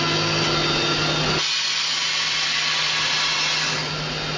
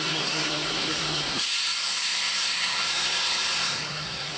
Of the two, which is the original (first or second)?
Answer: first